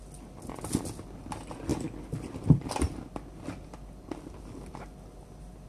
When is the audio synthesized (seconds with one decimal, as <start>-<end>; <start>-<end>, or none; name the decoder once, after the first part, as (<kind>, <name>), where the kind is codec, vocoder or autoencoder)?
none